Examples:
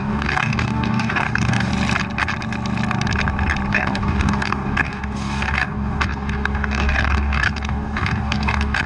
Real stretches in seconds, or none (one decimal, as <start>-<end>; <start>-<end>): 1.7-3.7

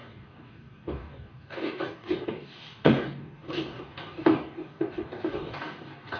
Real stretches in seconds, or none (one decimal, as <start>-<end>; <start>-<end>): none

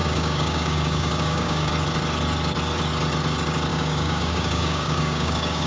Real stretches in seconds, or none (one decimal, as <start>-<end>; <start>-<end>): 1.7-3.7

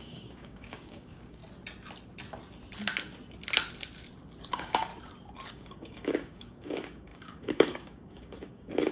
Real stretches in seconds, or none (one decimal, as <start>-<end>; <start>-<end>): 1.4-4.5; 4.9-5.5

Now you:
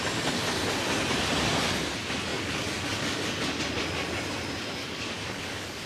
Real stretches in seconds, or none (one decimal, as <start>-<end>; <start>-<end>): 0.0-2.3; 3.6-4.8